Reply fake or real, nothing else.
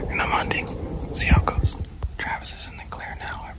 real